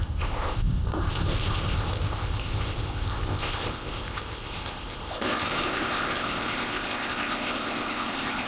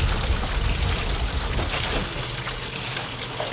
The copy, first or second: first